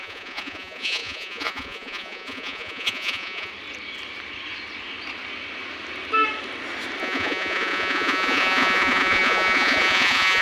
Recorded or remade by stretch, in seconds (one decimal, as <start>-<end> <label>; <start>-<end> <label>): 0.0-3.5 remade; 3.5-7.0 recorded; 7.0-10.4 remade